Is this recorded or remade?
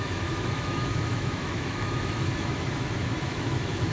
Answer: remade